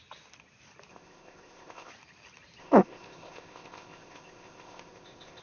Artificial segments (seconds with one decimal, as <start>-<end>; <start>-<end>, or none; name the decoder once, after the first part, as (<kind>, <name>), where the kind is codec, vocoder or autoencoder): 0.9-1.9 (codec, ZipCodec); 2.6-5.4